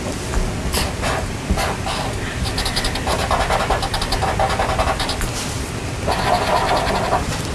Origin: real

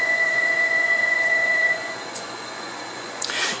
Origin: fake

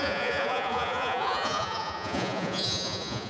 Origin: fake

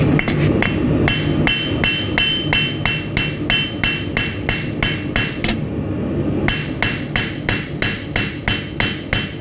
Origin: real